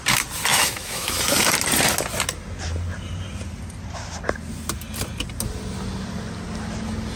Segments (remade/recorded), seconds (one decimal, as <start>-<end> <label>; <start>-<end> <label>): 0.0-0.5 recorded; 0.5-1.2 remade; 1.2-7.2 recorded